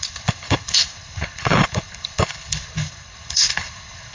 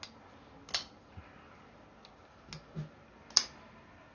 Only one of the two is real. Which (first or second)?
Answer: second